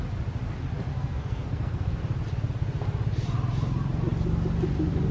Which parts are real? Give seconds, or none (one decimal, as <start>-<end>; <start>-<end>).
0.0-0.9; 2.0-5.1